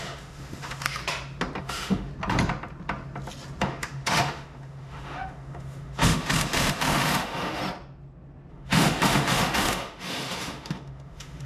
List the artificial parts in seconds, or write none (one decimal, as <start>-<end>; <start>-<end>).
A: 0.0-1.0; 1.6-2.1; 3.6-7.6; 8.5-11.5